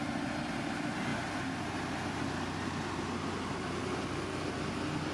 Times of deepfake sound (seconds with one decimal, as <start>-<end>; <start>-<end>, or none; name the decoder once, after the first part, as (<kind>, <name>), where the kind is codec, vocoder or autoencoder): 0.0-1.1 (vocoder, BigVGAN v2); 2.1-3.8